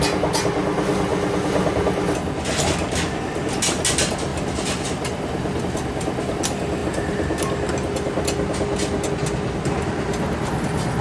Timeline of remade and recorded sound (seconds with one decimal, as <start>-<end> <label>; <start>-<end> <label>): 0.0-11.0 recorded